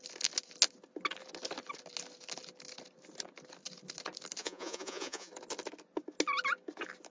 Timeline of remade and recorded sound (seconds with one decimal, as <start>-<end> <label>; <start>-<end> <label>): 0.0-4.4 recorded; 4.4-5.3 remade; 5.3-7.1 recorded